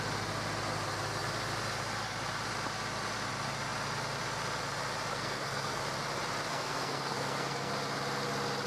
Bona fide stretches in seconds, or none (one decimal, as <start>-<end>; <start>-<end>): 0.0-5.1; 5.8-6.5; 7.7-8.7